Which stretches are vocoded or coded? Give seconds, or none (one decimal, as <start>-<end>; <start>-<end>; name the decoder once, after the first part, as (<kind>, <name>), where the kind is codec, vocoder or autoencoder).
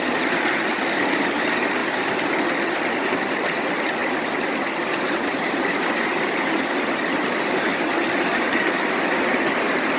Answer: none